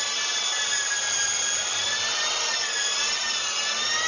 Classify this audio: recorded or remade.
recorded